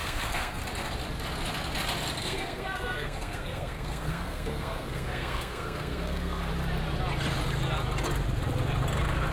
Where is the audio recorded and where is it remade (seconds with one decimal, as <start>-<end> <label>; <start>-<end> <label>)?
0.0-0.6 remade; 0.6-2.2 recorded; 2.2-6.5 remade; 6.5-9.3 recorded